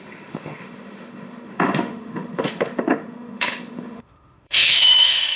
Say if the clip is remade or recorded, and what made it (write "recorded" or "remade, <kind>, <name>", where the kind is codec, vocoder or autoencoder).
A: remade, autoencoder, DAC-VAE